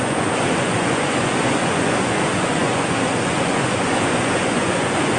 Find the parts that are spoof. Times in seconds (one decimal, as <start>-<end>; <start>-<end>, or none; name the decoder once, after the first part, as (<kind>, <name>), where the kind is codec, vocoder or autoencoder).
0.0-5.2 (vocoder, Vocos)